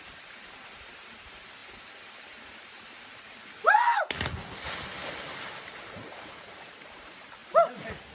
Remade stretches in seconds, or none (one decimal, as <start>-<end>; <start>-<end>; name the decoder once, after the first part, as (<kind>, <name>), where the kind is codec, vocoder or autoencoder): 0.0-7.4 (vocoder, BigVGAN v2)